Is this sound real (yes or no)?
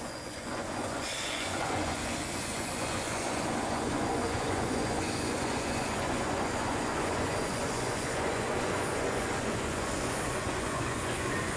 no